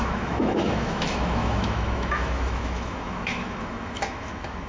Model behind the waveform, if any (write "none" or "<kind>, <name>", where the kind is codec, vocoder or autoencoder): autoencoder, DAC-VAE